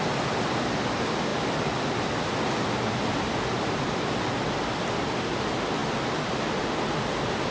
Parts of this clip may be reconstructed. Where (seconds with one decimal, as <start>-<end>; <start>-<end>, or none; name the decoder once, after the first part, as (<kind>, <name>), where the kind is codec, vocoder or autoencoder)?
none